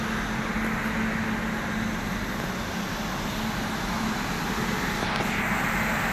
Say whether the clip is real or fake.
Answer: real